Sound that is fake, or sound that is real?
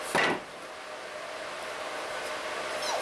real